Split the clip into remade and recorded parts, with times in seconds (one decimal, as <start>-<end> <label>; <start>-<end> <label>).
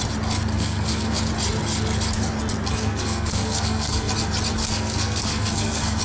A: 0.0-0.5 recorded; 0.5-1.2 remade; 1.2-2.8 recorded; 2.8-4.1 remade; 4.1-4.6 recorded; 4.6-6.0 remade